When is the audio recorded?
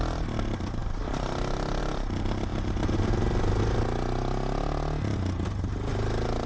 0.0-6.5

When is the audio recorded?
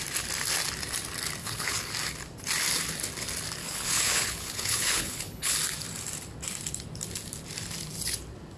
0.0-1.4; 1.9-3.6; 5.6-8.6